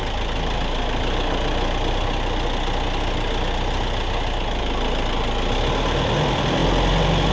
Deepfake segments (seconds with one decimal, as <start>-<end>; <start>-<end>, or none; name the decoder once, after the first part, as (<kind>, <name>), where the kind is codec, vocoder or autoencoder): none